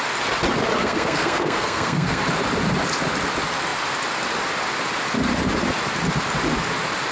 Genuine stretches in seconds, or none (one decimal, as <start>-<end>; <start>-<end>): 0.0-0.8; 2.2-7.1